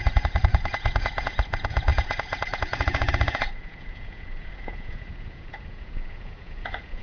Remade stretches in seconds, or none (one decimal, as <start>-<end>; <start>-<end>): 0.0-7.0